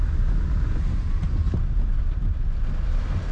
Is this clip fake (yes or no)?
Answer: no